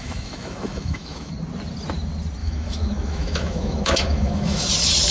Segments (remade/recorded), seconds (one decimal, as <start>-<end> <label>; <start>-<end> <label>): 0.0-1.3 remade; 1.3-2.4 recorded; 2.4-4.6 remade; 4.6-5.1 recorded